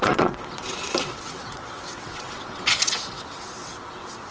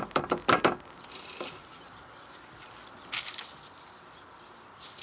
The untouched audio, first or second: second